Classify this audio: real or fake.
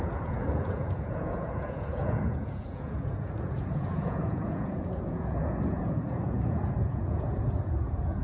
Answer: fake